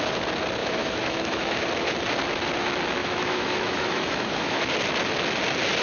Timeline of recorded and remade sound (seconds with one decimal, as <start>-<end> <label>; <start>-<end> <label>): 0.0-0.6 recorded; 0.6-1.6 remade; 1.6-3.0 recorded; 3.0-4.6 remade; 4.6-5.8 recorded